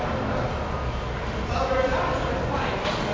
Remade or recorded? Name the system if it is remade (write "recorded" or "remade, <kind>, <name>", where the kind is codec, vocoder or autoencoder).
recorded